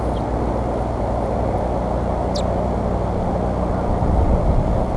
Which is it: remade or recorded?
recorded